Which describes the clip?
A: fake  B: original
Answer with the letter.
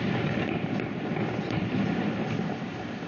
A